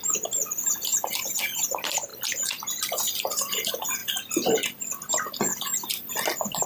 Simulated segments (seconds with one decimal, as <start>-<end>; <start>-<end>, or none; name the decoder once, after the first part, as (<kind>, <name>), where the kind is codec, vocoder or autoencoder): 5.5-6.1 (vocoder, BigVGAN v2)